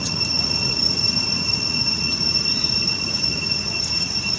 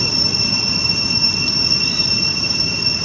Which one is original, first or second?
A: second